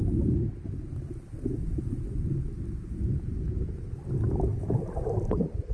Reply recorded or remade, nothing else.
recorded